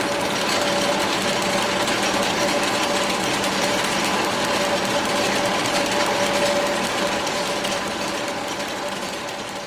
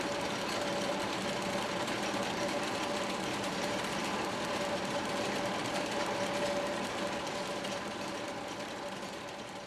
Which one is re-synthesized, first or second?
second